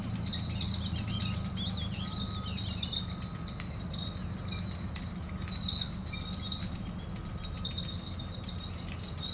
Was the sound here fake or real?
real